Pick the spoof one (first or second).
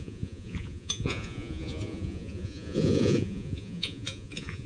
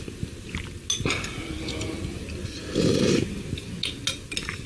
first